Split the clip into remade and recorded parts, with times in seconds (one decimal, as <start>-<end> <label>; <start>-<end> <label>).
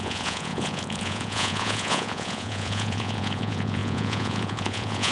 0.0-5.1 remade